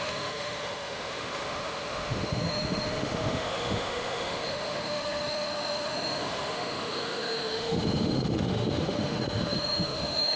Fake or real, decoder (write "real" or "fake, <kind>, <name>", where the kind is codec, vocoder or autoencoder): fake, autoencoder, DAC-VAE